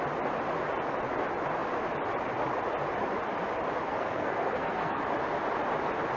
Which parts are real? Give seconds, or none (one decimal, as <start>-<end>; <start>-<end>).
0.0-3.9; 5.0-6.2